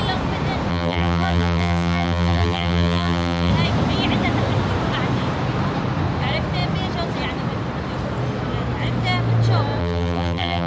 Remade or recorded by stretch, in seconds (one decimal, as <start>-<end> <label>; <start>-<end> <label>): 0.0-0.7 recorded; 0.7-3.5 remade; 3.5-9.8 recorded; 9.8-10.7 remade